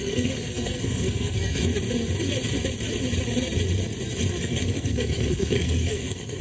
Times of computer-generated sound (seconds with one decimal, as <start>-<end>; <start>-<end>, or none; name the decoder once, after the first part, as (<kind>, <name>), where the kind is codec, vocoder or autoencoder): 0.0-1.7 (codec, SNAC); 4.4-6.4